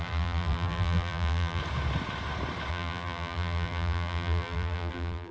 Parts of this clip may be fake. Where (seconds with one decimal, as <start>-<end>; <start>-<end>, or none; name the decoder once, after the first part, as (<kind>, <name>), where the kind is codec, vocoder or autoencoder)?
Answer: 0.0-1.6 (vocoder, BigVGAN v2); 2.7-5.3

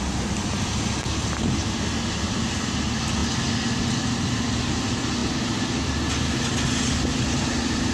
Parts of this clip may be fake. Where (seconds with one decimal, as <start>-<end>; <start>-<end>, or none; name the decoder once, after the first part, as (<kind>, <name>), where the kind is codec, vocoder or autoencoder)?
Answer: none

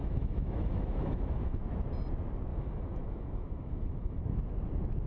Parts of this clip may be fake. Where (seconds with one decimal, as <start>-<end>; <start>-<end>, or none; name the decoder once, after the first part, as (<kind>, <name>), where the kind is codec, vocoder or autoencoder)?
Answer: 0.0-1.6 (autoencoder, DAC-VAE); 2.5-4.2

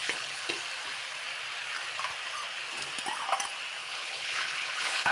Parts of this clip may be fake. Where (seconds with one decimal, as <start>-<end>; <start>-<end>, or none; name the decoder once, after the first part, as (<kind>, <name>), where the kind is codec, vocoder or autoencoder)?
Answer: 0.0-0.5 (codec, HILCodec); 3.8-5.1

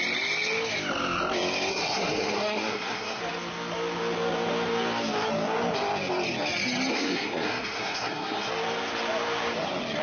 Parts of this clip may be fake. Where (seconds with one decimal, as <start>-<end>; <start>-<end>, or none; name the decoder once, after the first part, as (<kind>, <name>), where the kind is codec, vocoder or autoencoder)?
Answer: 1.7-3.2 (codec, SNAC); 6.9-8.5

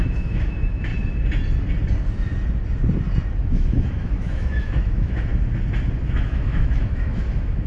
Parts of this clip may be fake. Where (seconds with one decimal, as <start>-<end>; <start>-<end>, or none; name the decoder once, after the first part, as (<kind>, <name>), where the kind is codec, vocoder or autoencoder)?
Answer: 0.0-0.9 (autoencoder, DAC-VAE); 3.5-5.3; 6.0-7.7